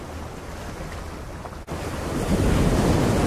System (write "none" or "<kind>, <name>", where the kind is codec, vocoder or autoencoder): none